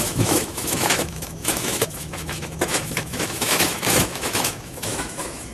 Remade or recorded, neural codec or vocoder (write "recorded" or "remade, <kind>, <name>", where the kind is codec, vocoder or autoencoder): remade, autoencoder, DAC-VAE